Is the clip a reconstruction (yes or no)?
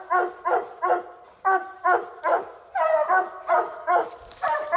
no